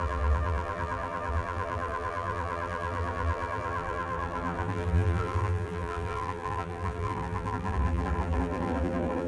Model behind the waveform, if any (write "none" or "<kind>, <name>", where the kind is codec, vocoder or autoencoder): vocoder, BigVGAN v2